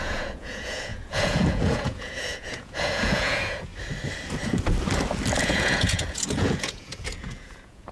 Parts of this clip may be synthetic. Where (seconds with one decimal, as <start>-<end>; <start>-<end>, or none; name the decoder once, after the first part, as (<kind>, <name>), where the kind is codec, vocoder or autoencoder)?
0.0-3.7 (vocoder, Vocos); 5.4-7.9